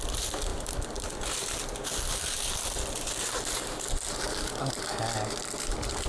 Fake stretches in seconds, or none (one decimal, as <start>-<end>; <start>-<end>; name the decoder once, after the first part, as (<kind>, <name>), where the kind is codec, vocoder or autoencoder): none